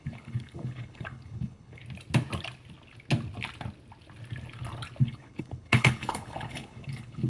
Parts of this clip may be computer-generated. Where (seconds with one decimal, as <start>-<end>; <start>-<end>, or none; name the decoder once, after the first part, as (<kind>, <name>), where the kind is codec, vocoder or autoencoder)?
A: 0.0-1.8 (codec, HILCodec); 5.0-7.3

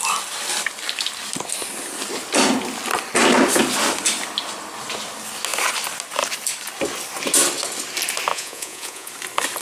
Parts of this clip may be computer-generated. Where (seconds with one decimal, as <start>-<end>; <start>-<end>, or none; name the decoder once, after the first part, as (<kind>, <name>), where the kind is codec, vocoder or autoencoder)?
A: 8.3-9.1 (vocoder, Vocos)

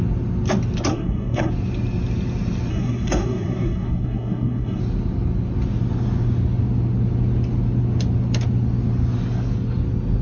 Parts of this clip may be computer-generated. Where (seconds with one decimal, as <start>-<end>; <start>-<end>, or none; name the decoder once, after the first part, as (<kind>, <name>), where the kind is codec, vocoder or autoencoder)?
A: 0.9-1.5 (codec, SNAC); 2.7-4.8